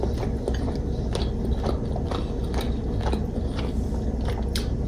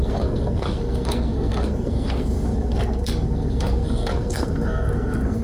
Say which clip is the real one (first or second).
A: first